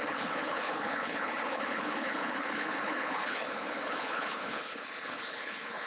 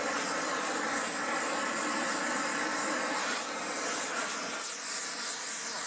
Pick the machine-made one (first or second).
first